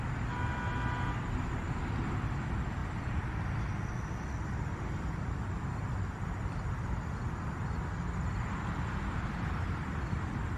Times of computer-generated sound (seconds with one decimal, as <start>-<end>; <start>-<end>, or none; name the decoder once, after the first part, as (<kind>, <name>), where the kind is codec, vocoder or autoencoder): none